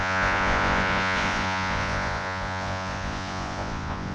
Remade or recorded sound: remade